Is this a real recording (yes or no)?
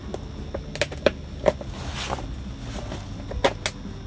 yes